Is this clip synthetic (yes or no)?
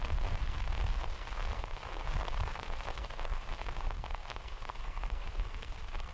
yes